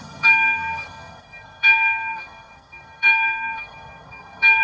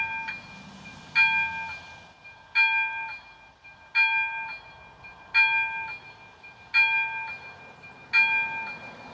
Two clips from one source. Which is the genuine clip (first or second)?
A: second